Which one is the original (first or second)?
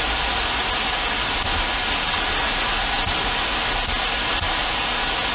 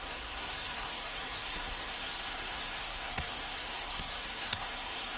first